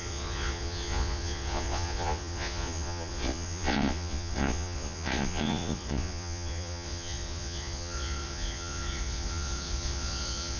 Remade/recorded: remade